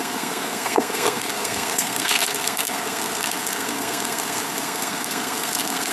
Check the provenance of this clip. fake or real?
fake